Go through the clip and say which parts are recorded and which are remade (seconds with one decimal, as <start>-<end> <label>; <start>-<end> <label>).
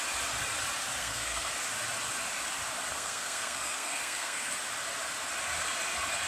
0.0-1.0 recorded; 1.0-1.5 remade; 1.5-2.9 recorded; 2.9-4.5 remade; 4.5-6.3 recorded